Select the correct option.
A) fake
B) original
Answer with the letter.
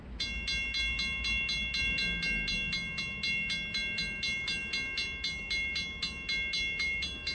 B